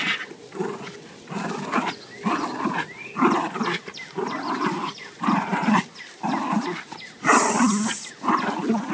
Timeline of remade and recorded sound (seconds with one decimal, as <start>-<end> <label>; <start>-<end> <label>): 0.0-8.9 recorded